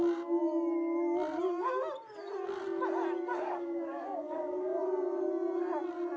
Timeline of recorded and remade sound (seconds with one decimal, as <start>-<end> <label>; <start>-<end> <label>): 0.0-3.3 recorded; 3.3-4.8 remade; 4.8-6.2 recorded